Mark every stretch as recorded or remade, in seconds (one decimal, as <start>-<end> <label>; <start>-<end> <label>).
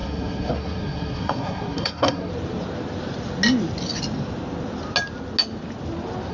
0.0-2.3 remade; 2.3-6.3 recorded